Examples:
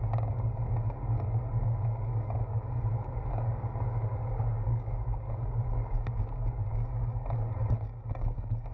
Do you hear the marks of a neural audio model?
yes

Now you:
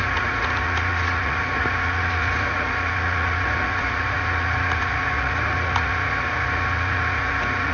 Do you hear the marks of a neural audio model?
yes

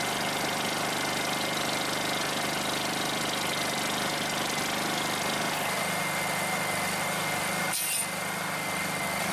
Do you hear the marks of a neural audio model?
no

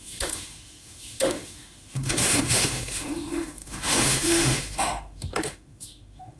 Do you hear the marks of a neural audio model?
yes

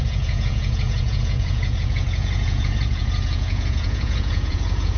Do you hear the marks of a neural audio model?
yes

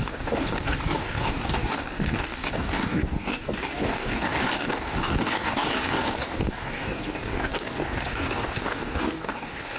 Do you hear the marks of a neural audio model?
yes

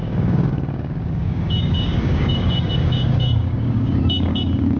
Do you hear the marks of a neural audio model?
yes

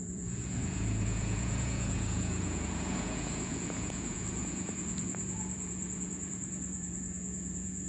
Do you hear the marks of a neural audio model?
yes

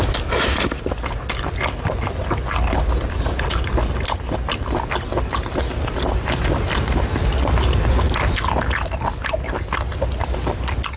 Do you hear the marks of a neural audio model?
no